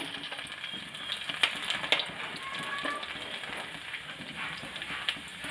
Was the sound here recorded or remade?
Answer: recorded